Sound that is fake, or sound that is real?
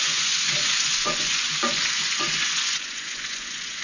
fake